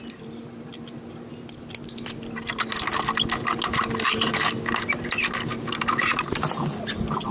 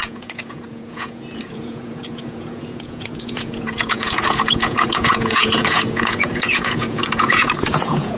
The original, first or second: first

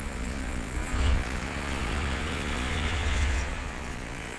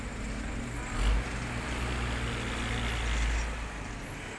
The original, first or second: second